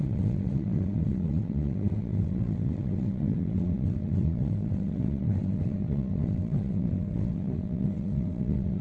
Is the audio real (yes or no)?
no